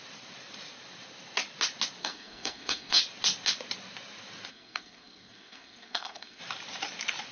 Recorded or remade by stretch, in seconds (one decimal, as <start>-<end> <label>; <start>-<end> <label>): 0.0-2.0 recorded; 2.0-3.0 remade; 3.0-4.5 recorded; 4.5-6.4 remade; 6.4-7.3 recorded